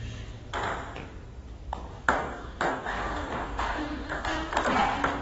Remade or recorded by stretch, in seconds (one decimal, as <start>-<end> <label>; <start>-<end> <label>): 0.0-1.9 recorded; 1.9-4.5 remade; 4.5-5.2 recorded